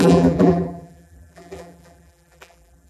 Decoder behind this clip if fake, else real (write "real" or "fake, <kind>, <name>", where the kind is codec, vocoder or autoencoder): fake, vocoder, BigVGAN v2